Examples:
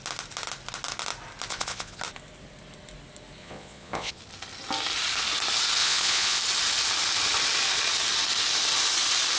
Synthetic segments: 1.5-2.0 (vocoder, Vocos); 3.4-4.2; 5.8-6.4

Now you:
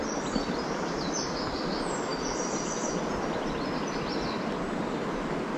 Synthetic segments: none

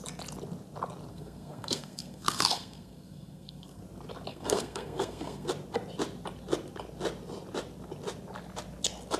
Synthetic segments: 1.1-3.8 (codec, SNAC); 4.3-5.5

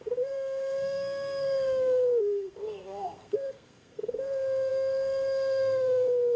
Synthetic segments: 0.0-6.4 (codec, SNAC)

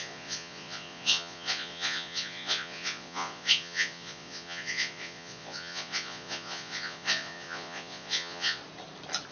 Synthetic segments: 0.0-8.6 (vocoder, Vocos)

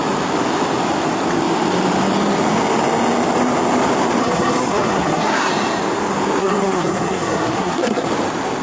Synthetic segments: 4.2-5.5 (codec, SNAC); 6.4-8.1

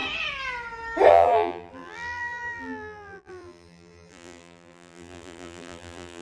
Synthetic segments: 1.1-6.2 (vocoder, BigVGAN v2)

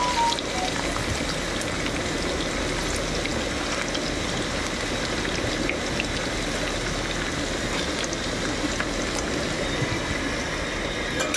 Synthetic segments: none